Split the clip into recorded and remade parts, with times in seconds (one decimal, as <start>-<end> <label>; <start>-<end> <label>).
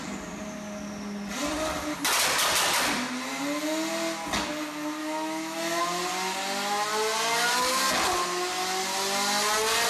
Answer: 0.0-5.0 recorded; 5.0-5.8 remade; 5.8-9.9 recorded